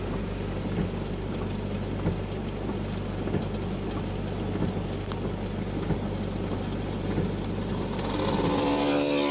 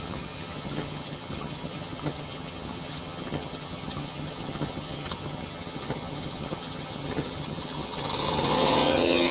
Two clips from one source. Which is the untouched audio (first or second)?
first